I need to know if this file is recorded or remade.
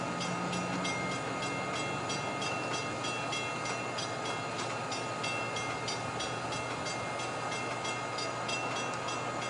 recorded